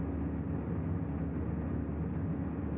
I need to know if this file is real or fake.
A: real